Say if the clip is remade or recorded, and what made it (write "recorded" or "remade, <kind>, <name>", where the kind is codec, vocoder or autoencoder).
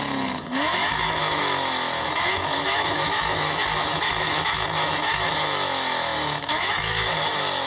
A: remade, autoencoder, DAC-VAE